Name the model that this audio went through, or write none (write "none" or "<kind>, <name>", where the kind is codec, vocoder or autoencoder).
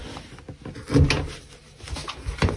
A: none